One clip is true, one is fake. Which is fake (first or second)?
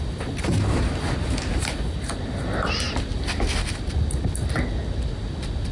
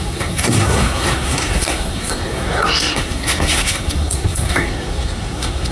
second